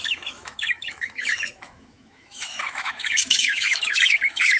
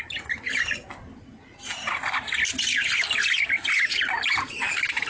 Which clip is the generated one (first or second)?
first